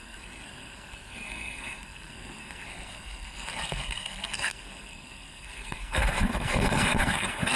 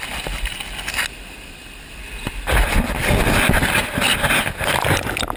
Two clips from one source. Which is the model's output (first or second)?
first